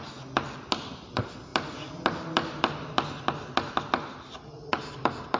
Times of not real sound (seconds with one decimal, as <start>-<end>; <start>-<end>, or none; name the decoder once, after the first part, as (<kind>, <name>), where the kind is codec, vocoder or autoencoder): none